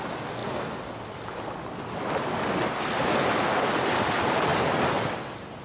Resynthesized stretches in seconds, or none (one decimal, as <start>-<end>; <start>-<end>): none